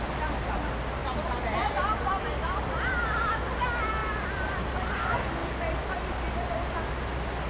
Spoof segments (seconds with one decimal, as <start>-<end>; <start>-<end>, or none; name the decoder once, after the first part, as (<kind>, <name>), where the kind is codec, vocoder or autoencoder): 1.0-3.5 (vocoder, BigVGAN v2); 4.0-4.6